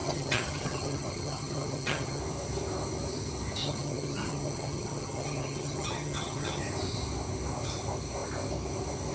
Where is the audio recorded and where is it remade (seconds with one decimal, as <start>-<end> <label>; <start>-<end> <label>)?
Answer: 0.0-2.2 remade; 2.2-3.6 recorded; 3.6-6.6 remade; 6.6-9.1 recorded